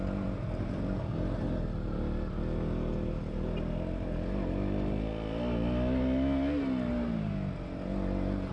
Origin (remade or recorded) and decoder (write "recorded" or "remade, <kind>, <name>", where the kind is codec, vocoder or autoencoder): recorded